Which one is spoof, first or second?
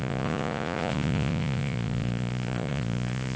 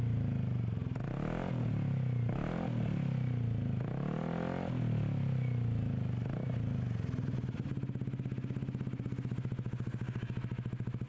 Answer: first